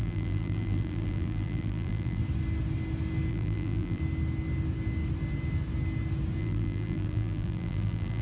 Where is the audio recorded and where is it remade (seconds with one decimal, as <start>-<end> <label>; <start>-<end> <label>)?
0.0-2.2 remade; 2.2-3.3 recorded; 3.3-4.0 remade; 4.0-6.4 recorded; 6.4-8.2 remade